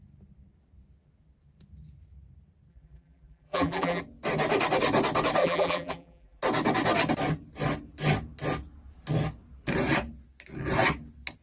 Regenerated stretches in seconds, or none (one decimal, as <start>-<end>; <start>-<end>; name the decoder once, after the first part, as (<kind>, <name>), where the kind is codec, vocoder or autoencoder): 2.7-4.0 (vocoder, BigVGAN v2); 5.4-6.4